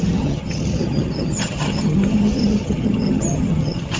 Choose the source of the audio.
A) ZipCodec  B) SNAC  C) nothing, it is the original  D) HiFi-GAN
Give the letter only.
D